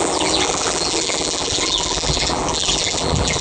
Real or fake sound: fake